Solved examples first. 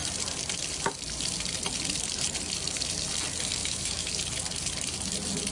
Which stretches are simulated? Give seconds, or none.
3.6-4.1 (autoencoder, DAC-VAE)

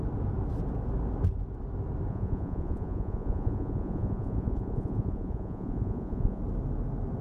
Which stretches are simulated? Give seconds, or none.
2.1-6.4 (vocoder, Vocos)

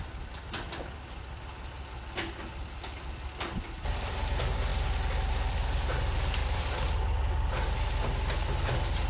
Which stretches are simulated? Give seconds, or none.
none

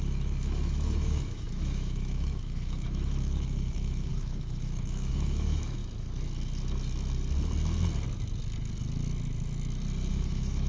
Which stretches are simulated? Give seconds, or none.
0.0-5.8 (autoencoder, DAC-VAE); 10.1-10.7

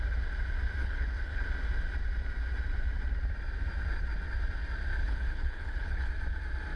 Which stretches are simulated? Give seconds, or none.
0.8-1.4 (codec, HILCodec); 5.0-6.1